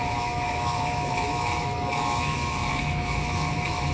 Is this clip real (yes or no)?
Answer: no